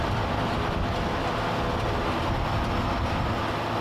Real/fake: real